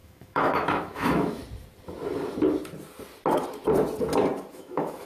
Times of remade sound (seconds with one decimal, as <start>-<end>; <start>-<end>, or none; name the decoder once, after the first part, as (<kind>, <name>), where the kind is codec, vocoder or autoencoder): 0.0-1.4 (autoencoder, DAC-VAE); 4.5-5.1